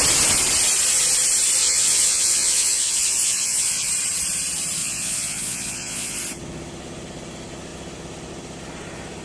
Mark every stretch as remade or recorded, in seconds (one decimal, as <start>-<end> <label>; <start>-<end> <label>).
0.0-1.6 recorded; 1.6-3.9 remade; 3.9-4.8 recorded; 4.8-6.2 remade; 6.2-9.2 recorded